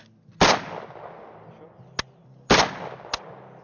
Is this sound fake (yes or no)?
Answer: no